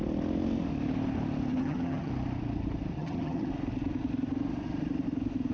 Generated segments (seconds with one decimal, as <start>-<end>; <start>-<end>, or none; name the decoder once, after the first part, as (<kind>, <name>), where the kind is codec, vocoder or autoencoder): 1.5-2.1 (vocoder, HiFi-GAN); 3.0-3.5